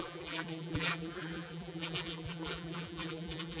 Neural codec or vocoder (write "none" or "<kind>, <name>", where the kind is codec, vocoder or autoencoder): vocoder, BigVGAN v2